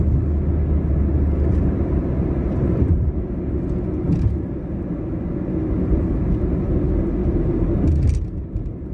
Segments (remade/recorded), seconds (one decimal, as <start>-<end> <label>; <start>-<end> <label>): 0.0-1.5 recorded; 1.5-3.4 remade; 3.4-7.2 recorded; 7.2-7.9 remade; 7.9-8.9 recorded